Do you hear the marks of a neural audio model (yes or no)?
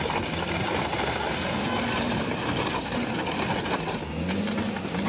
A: no